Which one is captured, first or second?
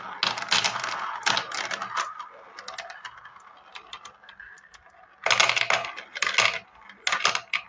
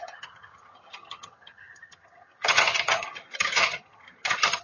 first